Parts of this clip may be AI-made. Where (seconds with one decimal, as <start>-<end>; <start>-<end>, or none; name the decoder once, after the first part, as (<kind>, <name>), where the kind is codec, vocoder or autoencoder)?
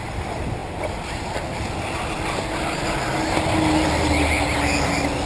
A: none